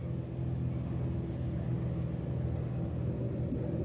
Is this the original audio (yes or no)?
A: yes